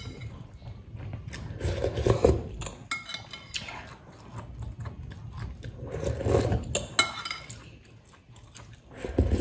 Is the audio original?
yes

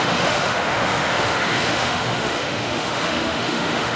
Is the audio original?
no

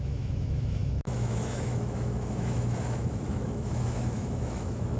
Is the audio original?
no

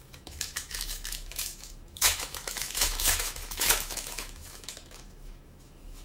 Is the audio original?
no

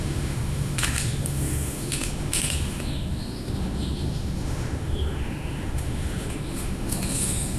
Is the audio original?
no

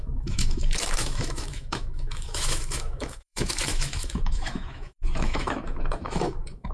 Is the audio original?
no